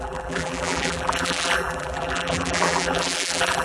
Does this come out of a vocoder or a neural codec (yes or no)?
yes